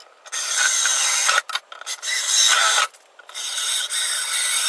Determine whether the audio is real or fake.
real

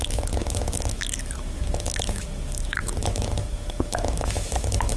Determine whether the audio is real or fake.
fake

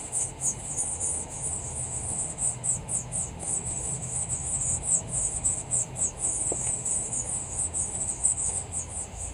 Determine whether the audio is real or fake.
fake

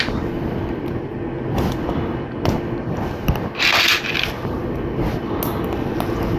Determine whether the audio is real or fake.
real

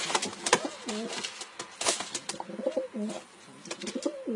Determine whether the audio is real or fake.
real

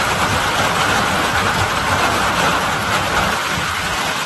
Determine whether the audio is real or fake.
real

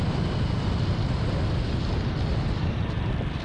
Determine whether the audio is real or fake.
real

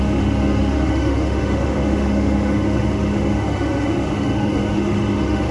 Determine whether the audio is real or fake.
fake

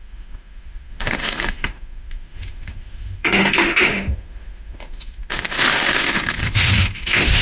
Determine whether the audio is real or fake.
fake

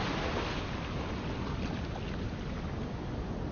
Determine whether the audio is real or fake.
real